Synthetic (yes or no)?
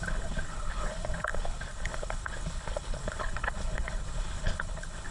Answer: yes